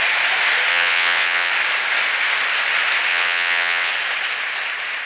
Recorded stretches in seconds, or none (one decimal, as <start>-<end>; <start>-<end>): 0.0-0.7; 1.5-3.1; 3.9-5.1

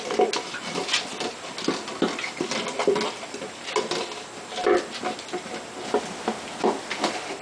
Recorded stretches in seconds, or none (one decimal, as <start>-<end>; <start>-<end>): 0.0-7.4

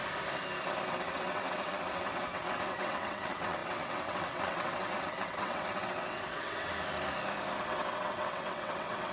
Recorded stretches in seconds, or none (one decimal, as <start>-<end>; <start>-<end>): 0.0-0.9; 6.7-7.6

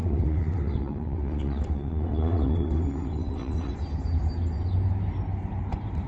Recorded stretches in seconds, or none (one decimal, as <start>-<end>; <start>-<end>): 3.7-6.1

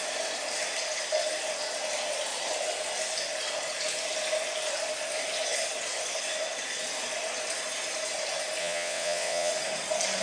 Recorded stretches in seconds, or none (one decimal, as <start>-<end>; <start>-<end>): 0.0-8.6; 9.5-10.2

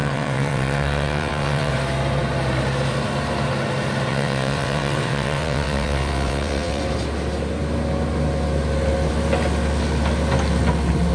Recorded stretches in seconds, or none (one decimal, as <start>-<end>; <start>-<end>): 1.7-4.1; 6.8-11.1